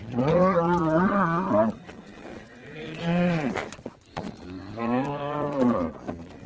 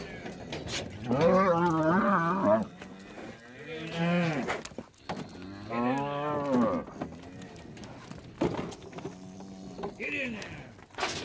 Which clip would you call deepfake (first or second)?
first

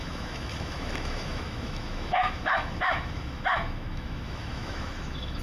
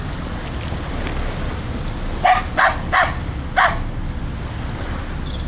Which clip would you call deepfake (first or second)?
first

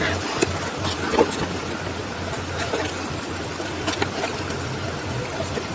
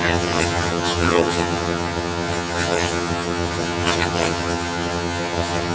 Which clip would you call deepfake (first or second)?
second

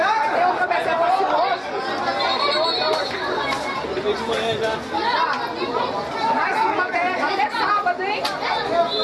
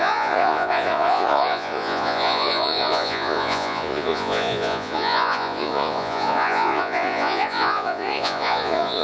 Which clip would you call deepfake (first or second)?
second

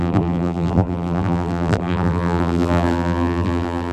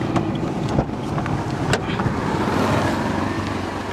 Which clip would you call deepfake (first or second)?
first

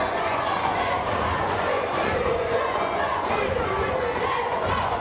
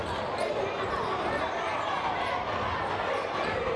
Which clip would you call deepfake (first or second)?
first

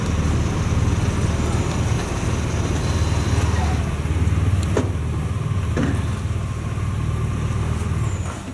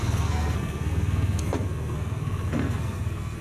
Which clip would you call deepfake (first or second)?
second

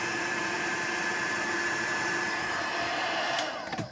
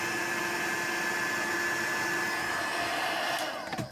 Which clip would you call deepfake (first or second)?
first